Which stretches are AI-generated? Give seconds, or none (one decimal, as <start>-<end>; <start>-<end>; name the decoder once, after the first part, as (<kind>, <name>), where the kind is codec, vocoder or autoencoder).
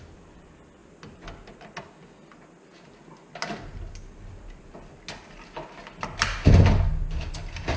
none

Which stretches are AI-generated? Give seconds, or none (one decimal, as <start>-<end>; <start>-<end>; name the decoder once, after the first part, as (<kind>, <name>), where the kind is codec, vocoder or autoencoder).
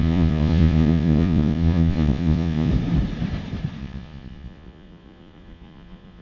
0.0-2.7 (vocoder, Vocos); 3.8-6.2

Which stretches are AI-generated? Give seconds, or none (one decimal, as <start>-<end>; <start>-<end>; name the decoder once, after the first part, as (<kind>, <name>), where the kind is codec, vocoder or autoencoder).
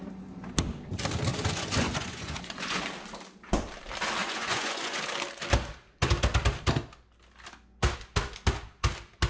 1.3-2.8 (vocoder, Vocos); 4.2-5.0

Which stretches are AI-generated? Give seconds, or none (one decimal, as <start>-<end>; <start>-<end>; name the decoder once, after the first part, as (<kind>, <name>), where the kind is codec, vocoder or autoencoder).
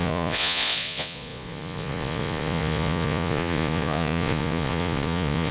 0.0-5.5 (vocoder, Vocos)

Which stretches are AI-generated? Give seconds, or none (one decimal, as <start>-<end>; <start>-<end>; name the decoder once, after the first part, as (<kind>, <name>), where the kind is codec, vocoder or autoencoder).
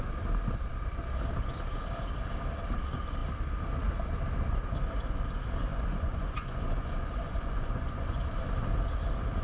5.7-8.2 (vocoder, Vocos)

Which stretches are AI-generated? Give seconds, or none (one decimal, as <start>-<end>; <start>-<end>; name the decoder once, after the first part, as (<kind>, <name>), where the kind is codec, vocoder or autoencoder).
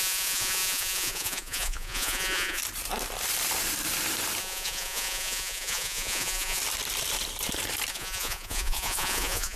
0.0-2.6 (vocoder, Vocos); 4.4-6.6; 7.9-9.6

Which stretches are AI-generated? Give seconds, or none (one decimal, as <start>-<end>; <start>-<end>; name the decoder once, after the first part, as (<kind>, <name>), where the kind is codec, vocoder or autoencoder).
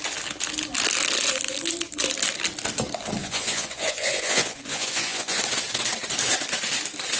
3.2-5.4 (vocoder, Vocos)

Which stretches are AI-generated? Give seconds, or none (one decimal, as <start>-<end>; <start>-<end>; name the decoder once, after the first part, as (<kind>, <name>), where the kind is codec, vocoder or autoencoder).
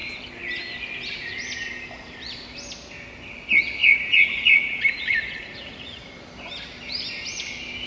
3.8-6.1 (vocoder, Vocos)